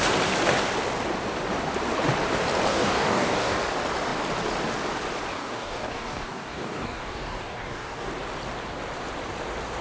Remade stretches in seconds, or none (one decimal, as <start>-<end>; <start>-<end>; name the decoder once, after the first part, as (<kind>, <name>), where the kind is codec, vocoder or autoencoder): 2.7-3.6 (codec, DAC); 5.3-8.1